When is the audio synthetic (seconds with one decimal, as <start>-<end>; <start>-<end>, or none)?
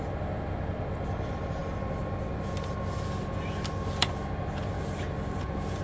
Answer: none